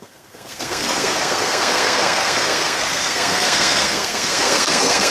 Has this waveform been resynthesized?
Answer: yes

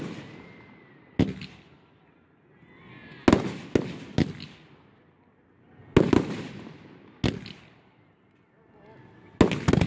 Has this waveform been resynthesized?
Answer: no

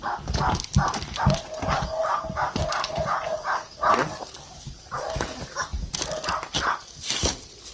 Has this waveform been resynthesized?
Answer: no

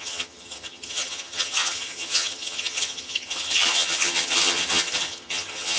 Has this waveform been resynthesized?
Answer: yes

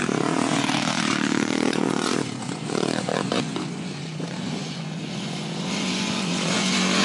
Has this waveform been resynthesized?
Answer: yes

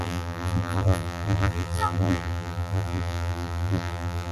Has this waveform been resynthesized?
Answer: yes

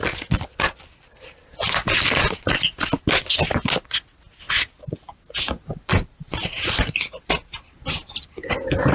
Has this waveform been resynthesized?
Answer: no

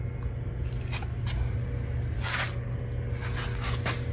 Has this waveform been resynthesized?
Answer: no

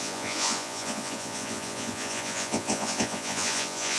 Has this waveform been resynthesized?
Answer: yes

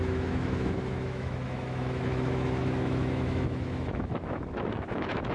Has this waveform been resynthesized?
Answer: yes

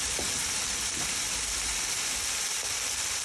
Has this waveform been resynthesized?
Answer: yes